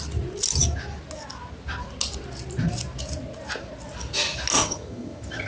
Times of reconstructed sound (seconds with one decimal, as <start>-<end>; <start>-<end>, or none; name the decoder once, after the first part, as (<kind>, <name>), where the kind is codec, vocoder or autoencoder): 4.6-5.5 (vocoder, HiFi-GAN)